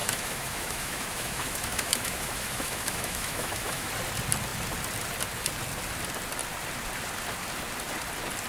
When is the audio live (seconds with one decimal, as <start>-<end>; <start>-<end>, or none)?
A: 3.9-8.5